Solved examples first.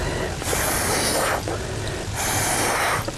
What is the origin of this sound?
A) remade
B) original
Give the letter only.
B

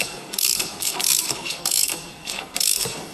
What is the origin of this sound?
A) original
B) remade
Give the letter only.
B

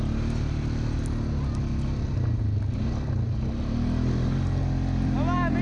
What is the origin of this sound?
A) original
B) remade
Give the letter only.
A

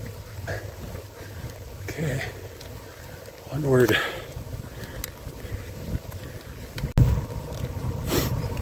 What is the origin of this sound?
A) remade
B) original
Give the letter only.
B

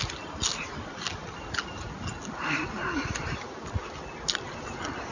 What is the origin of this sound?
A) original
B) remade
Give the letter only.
A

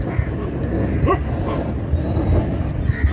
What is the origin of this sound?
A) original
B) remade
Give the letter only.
A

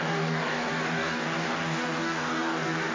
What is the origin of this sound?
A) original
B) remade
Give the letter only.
B